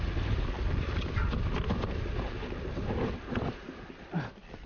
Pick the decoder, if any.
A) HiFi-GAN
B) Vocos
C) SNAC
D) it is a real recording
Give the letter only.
D